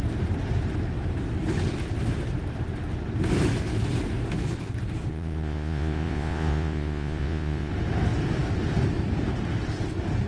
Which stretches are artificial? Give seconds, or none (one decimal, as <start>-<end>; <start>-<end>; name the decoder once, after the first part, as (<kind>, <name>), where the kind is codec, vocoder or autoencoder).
5.1-7.7 (vocoder, Vocos)